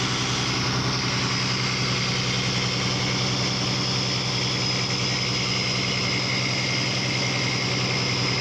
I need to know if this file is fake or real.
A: real